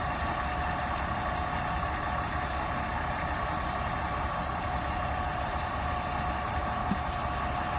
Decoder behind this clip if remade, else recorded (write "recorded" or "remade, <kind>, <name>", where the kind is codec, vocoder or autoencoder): recorded